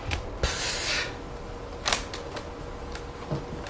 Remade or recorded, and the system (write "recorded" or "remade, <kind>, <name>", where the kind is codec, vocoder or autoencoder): recorded